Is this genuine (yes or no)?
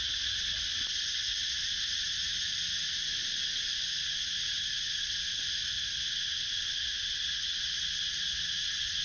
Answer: no